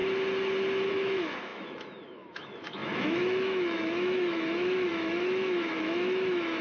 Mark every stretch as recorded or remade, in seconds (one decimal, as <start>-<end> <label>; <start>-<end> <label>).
0.0-0.9 recorded; 0.9-6.6 remade